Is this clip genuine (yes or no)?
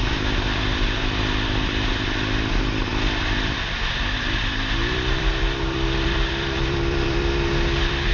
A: no